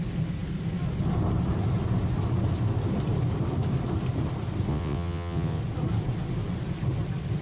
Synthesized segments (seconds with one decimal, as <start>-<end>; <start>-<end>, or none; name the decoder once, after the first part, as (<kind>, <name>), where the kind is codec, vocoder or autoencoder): 4.7-5.6 (vocoder, WaveNeXt)